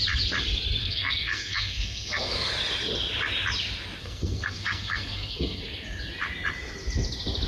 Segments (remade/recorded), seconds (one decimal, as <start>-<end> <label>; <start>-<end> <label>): 0.0-0.8 recorded; 0.8-2.5 remade; 2.5-4.0 recorded; 4.0-5.6 remade; 5.6-7.5 recorded